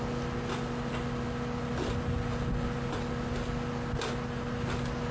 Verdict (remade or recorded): recorded